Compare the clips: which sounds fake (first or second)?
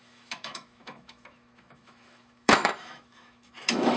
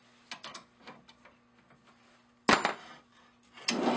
first